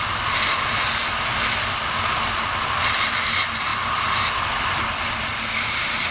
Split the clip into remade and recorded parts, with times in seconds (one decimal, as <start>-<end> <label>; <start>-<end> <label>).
0.0-6.1 recorded